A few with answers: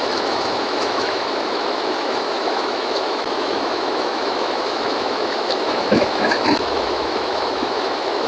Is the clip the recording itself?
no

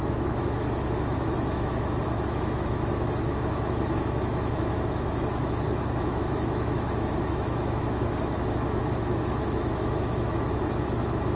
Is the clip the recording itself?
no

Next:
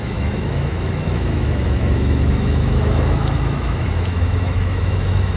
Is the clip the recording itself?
no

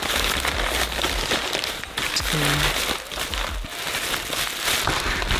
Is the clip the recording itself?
yes